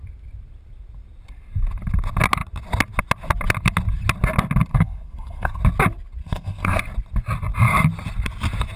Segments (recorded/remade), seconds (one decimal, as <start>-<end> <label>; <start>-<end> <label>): 0.0-4.7 recorded; 4.7-5.6 remade; 5.6-6.2 recorded; 6.2-6.8 remade; 6.8-8.8 recorded